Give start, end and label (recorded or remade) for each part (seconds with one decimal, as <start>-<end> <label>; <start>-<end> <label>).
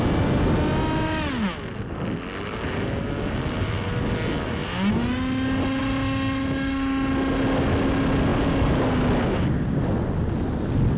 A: 0.0-11.0 recorded